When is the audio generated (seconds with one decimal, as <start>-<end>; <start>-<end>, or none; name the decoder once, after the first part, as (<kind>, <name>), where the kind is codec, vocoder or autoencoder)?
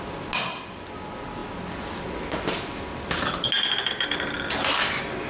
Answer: none